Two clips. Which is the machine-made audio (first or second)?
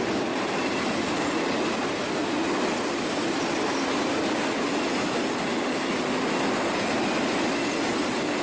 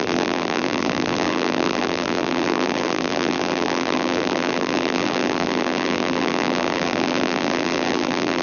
second